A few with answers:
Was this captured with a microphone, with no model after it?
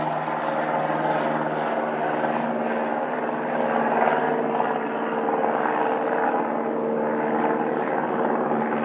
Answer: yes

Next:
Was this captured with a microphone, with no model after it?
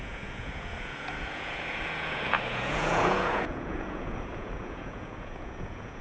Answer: no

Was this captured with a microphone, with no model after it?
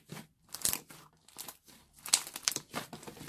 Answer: no